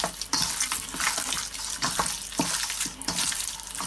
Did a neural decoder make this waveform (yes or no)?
no